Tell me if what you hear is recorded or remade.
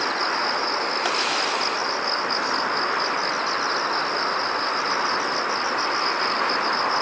recorded